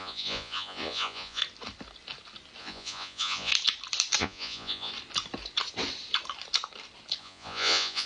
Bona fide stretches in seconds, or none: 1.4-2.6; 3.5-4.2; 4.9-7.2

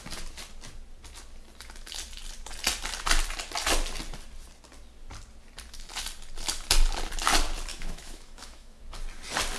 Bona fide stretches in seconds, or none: 0.0-7.7; 8.8-9.6

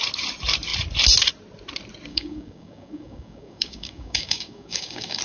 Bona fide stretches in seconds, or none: 0.0-2.1

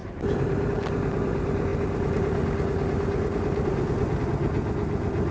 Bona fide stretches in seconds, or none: 0.7-5.3

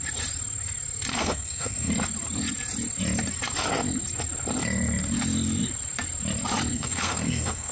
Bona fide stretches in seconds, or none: 0.0-1.1; 1.9-6.7

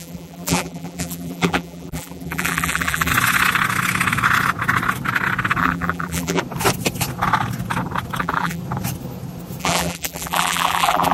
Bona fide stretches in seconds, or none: 3.1-5.6; 6.4-8.2; 8.6-9.6